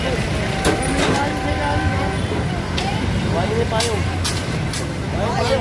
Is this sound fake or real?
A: real